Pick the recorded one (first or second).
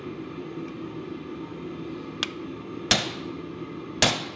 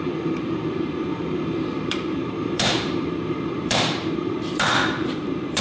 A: first